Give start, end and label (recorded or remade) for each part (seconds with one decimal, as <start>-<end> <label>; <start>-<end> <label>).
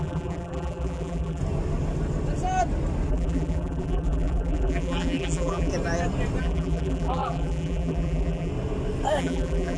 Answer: 0.0-1.4 remade; 1.4-3.1 recorded; 3.1-5.7 remade; 5.7-6.4 recorded; 6.4-8.5 remade; 8.5-9.2 recorded; 9.2-9.8 remade